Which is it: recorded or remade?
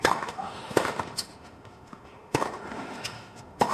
remade